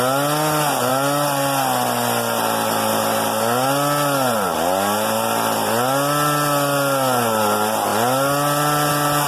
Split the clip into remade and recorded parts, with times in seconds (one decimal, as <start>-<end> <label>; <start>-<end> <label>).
0.0-9.3 recorded